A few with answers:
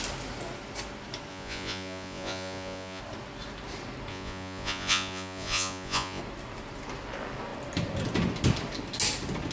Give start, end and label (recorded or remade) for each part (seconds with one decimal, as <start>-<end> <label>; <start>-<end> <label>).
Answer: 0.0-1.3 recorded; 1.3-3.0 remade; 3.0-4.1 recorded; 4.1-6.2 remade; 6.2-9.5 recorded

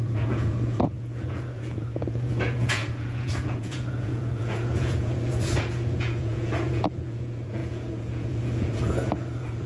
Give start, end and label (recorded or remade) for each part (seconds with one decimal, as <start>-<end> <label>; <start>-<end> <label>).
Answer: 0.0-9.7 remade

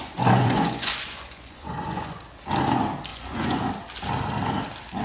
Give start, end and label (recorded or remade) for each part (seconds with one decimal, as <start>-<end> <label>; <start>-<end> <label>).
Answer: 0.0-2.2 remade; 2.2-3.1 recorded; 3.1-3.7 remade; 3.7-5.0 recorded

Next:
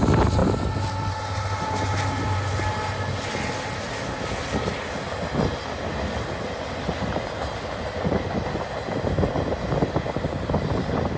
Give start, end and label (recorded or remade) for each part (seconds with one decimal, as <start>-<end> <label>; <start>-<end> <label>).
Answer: 0.0-11.2 recorded

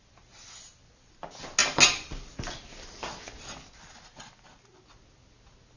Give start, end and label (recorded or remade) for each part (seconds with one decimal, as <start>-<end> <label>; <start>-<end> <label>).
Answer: 0.0-5.8 recorded

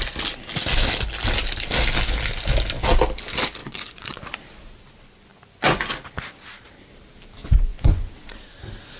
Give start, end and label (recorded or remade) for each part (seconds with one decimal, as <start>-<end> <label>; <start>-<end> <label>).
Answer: 0.0-3.6 recorded; 3.6-4.2 remade; 4.2-5.3 recorded; 5.3-5.9 remade; 5.9-7.4 recorded; 7.4-8.1 remade; 8.1-9.0 recorded

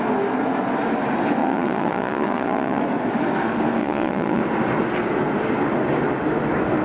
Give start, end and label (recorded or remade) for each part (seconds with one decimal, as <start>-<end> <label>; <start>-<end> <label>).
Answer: 0.0-1.4 recorded; 1.4-2.8 remade; 2.8-3.8 recorded; 3.8-4.4 remade; 4.4-6.8 recorded

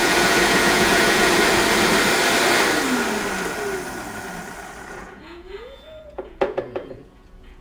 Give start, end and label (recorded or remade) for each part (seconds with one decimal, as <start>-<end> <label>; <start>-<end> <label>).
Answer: 0.0-1.3 remade; 1.3-4.9 recorded; 4.9-7.6 remade